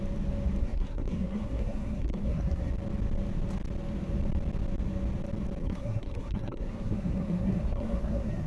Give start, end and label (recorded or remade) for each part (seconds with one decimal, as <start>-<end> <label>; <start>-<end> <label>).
0.0-0.6 recorded; 0.6-2.7 remade; 2.7-5.6 recorded; 5.6-8.5 remade